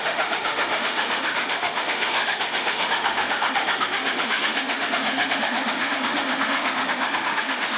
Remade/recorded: remade